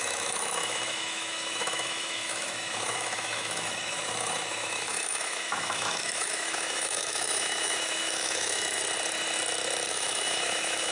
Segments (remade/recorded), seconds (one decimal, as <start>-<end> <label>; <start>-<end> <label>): 0.0-8.8 remade; 8.8-9.9 recorded; 9.9-10.9 remade